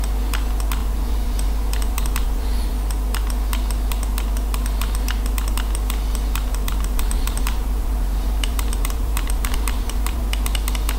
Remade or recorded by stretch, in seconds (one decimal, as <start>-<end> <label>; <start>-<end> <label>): 0.0-0.8 recorded; 0.8-2.7 remade; 2.7-6.5 recorded; 6.5-10.2 remade; 10.2-11.0 recorded

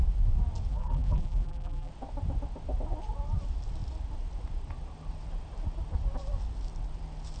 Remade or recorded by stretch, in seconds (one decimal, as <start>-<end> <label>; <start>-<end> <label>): 0.0-0.7 recorded; 0.7-1.9 remade; 1.9-7.4 recorded

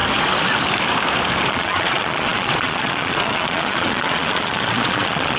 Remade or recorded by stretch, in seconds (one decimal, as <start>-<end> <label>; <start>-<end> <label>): 0.0-1.5 recorded; 1.5-5.4 remade

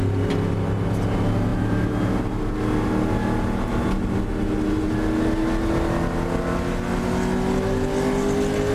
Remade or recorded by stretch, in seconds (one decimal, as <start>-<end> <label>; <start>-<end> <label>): 0.0-1.5 recorded; 1.5-2.5 remade; 2.5-8.7 recorded

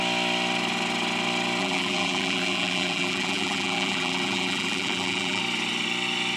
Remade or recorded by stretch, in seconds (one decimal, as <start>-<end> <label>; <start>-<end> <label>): 0.0-1.6 recorded; 1.6-5.4 remade; 5.4-6.4 recorded